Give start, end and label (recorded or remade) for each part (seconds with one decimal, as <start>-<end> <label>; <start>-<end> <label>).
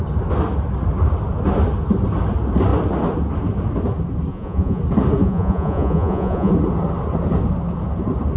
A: 0.0-4.3 recorded; 4.3-4.8 remade; 4.8-5.2 recorded; 5.2-6.5 remade; 6.5-8.4 recorded